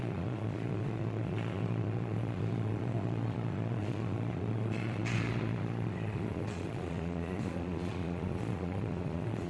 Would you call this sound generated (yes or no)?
yes